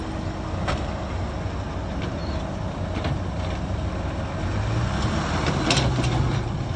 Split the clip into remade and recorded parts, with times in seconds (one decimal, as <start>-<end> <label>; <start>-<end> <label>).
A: 0.0-6.8 recorded